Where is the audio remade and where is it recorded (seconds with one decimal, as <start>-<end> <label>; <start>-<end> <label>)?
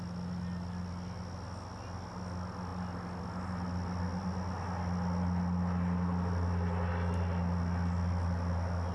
0.0-8.9 recorded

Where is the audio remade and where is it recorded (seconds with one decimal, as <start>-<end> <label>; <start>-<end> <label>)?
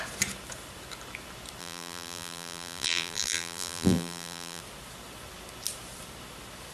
0.0-1.6 recorded; 1.6-4.6 remade; 4.6-6.7 recorded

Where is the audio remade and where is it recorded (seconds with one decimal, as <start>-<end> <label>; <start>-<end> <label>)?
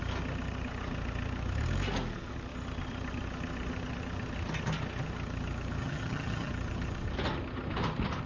0.0-5.8 recorded; 5.8-6.5 remade; 6.5-8.3 recorded